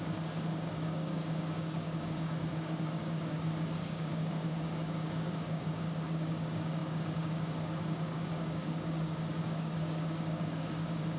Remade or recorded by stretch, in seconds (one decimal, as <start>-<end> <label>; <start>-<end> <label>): 0.0-11.2 remade